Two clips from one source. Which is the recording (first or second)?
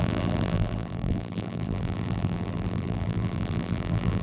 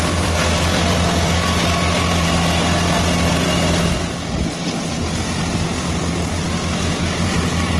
second